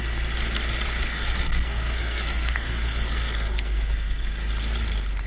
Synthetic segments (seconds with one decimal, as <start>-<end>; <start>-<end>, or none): 1.1-4.3